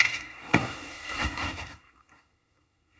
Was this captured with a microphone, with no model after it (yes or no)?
no